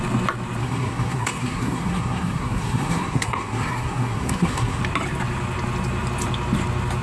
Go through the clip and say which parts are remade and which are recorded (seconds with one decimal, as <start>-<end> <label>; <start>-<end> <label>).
0.0-0.6 recorded; 0.6-4.8 remade; 4.8-7.0 recorded